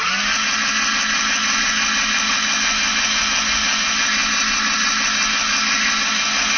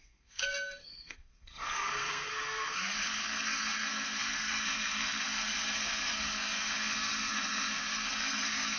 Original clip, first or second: first